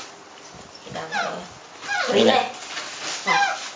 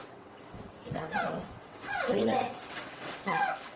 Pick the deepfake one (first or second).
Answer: second